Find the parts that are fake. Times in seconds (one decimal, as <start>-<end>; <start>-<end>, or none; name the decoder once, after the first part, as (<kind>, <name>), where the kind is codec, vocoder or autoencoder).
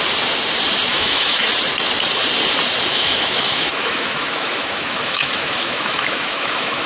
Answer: 0.9-1.5 (autoencoder, DAC-VAE); 2.9-6.9